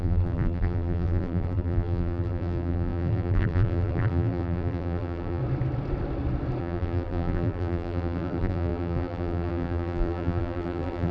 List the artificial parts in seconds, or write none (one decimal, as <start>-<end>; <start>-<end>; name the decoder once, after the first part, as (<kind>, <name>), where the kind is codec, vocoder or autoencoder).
0.0-5.4 (vocoder, BigVGAN v2); 6.6-11.1